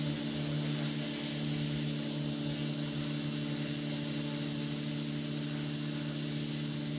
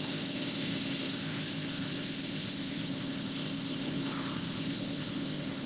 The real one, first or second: first